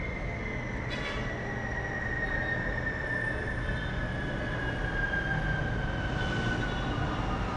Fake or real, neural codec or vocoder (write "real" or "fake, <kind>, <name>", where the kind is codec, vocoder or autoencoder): real